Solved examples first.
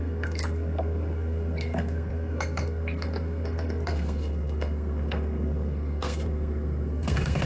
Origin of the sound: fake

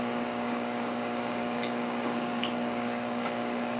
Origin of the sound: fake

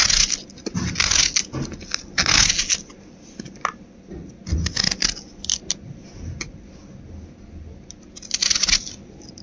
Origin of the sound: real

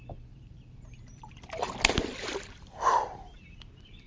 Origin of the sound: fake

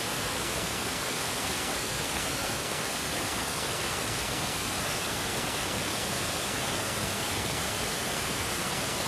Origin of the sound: fake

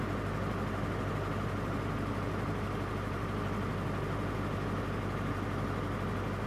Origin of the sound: real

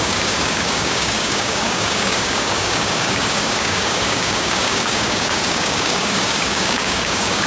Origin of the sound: fake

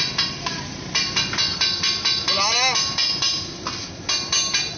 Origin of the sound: real